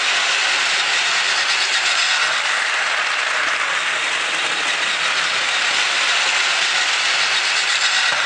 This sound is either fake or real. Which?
real